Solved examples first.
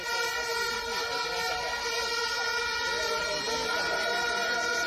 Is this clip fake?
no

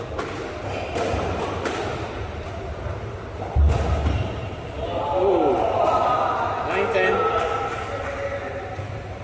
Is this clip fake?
no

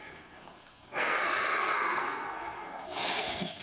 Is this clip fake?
yes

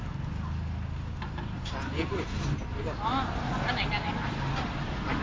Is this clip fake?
no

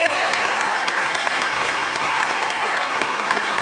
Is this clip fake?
yes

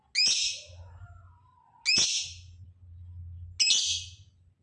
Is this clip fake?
no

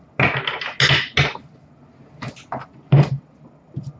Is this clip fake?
no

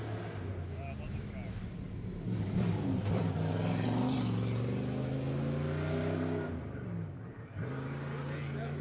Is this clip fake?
no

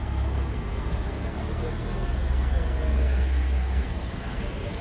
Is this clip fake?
yes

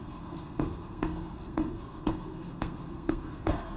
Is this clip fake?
yes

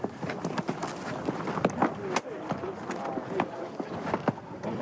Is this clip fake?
no